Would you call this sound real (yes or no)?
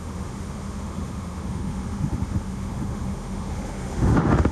no